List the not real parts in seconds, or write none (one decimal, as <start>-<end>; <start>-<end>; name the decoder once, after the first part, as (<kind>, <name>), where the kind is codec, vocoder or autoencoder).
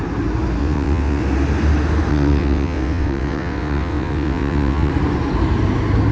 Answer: 0.6-1.2 (vocoder, WaveNeXt); 2.1-4.9